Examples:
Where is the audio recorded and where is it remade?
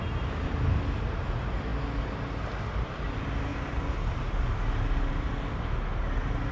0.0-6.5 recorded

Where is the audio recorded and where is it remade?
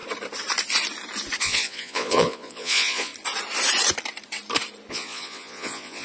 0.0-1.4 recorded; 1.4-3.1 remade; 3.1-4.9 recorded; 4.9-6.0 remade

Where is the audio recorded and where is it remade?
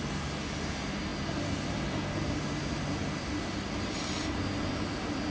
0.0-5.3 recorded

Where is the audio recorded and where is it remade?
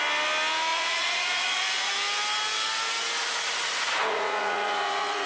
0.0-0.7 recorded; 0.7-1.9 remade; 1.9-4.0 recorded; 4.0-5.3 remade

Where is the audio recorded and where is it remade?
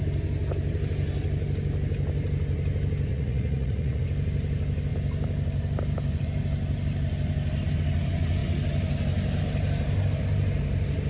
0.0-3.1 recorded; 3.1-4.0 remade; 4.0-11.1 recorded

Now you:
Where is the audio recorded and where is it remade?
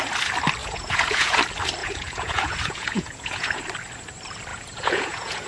0.0-0.6 recorded; 0.6-1.4 remade; 1.4-1.8 recorded; 1.8-3.6 remade; 3.6-4.5 recorded; 4.5-5.5 remade